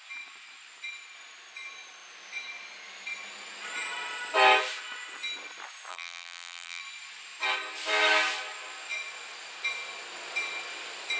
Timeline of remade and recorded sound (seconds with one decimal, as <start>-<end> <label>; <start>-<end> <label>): 0.0-5.9 recorded; 5.9-6.8 remade; 6.8-11.2 recorded